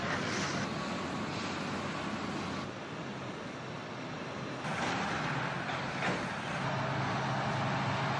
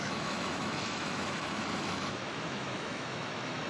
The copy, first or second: second